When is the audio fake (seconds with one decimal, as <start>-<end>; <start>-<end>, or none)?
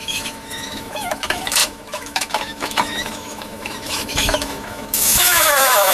0.0-5.9